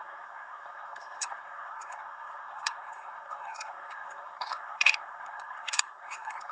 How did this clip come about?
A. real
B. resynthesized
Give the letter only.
B